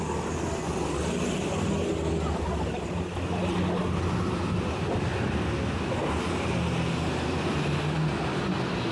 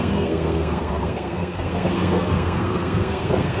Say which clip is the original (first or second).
first